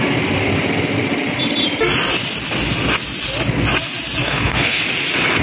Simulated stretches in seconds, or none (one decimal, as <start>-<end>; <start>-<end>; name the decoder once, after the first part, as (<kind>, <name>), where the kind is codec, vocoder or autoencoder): 4.2-4.8 (codec, SNAC)